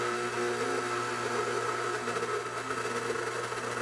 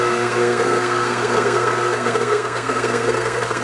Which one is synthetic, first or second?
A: second